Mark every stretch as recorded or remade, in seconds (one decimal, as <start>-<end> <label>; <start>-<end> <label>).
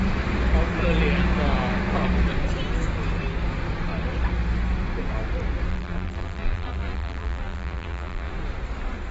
0.0-5.7 recorded; 5.7-8.3 remade; 8.3-9.1 recorded